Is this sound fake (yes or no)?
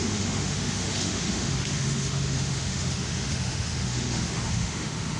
yes